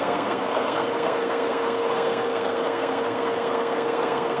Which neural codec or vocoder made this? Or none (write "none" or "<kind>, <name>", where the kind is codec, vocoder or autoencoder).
codec, SNAC